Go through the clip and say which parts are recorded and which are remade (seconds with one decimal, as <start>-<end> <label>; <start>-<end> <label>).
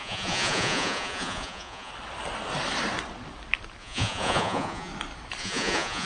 0.0-1.9 remade; 1.9-3.8 recorded; 3.8-4.9 remade; 4.9-5.4 recorded; 5.4-6.1 remade